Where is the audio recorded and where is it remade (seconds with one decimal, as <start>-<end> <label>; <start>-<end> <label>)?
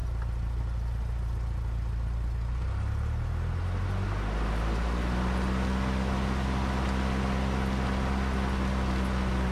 0.0-9.5 recorded